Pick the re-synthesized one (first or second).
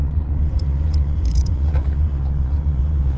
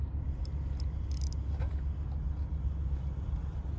first